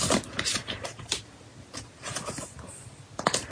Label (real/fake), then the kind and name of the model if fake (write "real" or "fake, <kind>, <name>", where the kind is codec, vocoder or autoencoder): real